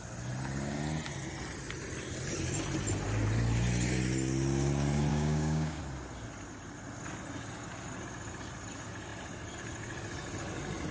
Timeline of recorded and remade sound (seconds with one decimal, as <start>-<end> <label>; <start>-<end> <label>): 0.0-5.1 recorded; 5.1-5.8 remade; 5.8-10.9 recorded